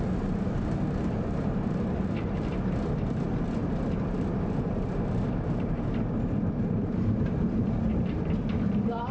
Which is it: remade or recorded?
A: remade